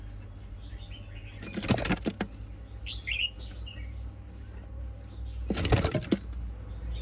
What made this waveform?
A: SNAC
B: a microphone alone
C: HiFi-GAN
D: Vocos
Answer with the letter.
B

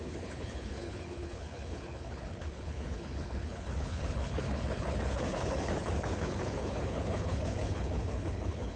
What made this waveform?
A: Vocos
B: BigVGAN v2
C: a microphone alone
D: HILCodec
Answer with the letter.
D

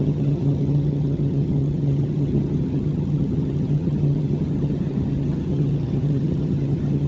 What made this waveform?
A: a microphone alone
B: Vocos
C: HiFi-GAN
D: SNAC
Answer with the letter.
C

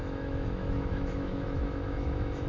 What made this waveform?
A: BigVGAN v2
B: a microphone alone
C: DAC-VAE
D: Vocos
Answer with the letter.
C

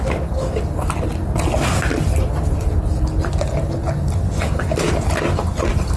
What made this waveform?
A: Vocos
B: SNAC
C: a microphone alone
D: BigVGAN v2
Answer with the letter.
C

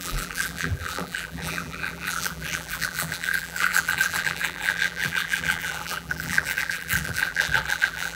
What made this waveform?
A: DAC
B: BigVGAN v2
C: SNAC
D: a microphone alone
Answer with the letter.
B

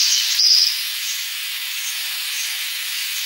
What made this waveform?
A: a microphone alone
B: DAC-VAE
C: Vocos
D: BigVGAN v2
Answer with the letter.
B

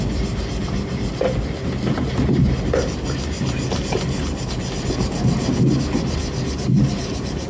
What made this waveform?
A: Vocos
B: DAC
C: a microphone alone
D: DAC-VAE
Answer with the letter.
C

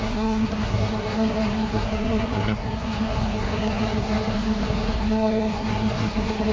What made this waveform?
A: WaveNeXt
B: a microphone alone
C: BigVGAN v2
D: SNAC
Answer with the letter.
D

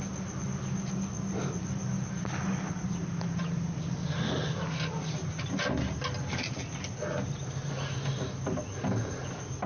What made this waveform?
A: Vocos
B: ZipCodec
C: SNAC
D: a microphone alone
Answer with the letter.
D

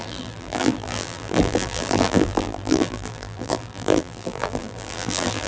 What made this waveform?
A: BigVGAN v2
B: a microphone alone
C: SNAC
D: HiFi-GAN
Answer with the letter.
A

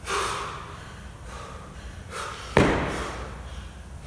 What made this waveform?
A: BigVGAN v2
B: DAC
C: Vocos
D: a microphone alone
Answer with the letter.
D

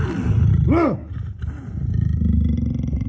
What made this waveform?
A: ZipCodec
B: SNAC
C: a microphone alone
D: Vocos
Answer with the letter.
C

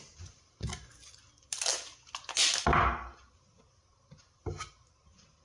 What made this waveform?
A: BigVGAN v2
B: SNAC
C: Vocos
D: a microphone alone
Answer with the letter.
D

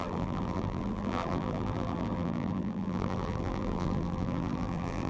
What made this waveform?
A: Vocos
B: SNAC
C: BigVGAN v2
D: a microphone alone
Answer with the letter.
C